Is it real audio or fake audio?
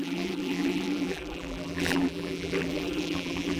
fake